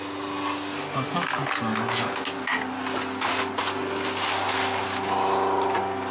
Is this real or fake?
real